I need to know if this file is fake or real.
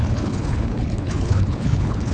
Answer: fake